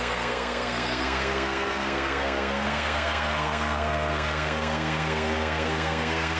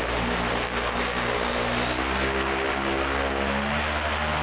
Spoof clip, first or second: first